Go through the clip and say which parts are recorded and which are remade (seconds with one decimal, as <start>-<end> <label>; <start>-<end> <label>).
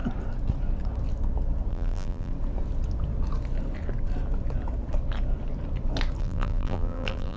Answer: 0.0-1.7 recorded; 1.7-2.3 remade; 2.3-6.2 recorded; 6.2-7.4 remade